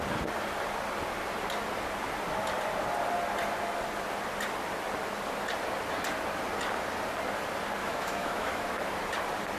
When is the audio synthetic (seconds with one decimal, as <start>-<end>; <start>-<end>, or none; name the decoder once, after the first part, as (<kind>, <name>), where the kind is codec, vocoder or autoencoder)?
7.8-8.7 (autoencoder, DAC-VAE)